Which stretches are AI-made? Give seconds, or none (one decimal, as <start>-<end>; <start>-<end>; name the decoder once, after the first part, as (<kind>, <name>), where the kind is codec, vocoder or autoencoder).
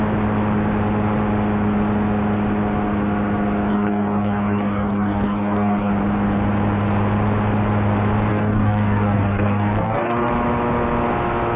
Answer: 3.7-5.9 (codec, DAC); 8.3-10.3